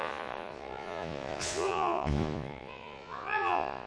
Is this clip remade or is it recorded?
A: remade